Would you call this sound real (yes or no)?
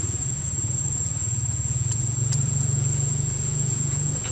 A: no